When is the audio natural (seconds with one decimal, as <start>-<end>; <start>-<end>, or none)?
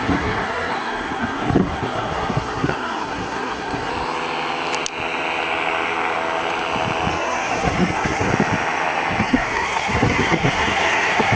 3.9-7.1; 8.3-9.2